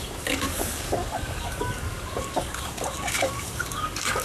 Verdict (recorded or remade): remade